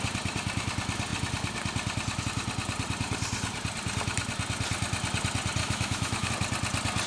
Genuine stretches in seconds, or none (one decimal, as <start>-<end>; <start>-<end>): 0.0-5.6; 6.3-7.1